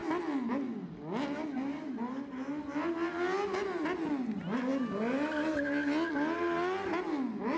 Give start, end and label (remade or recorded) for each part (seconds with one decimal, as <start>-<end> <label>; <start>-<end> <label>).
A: 0.0-7.6 recorded